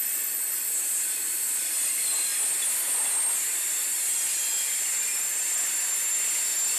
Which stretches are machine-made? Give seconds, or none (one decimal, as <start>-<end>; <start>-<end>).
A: none